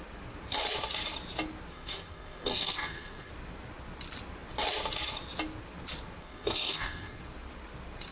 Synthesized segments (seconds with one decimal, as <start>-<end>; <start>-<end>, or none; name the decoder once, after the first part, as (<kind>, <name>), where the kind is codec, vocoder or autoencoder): 1.7-3.3 (codec, SNAC); 6.2-7.2